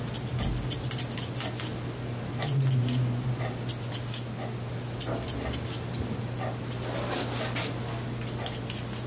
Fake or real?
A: real